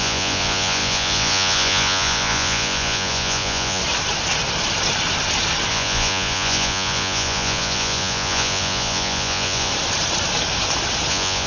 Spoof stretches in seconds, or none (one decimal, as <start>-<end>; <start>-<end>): 0.0-3.8; 5.7-9.7; 11.1-11.5